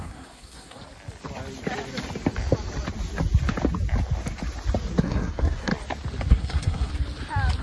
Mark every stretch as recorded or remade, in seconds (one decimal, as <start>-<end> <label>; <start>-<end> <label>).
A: 0.0-0.8 remade; 0.8-5.0 recorded; 5.0-5.7 remade; 5.7-6.3 recorded; 6.3-6.9 remade; 6.9-7.6 recorded